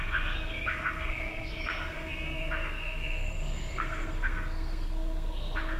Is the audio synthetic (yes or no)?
yes